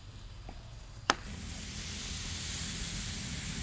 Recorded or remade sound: recorded